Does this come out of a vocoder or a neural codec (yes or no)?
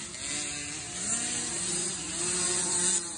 no